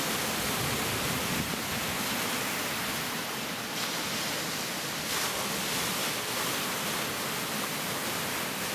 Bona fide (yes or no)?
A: yes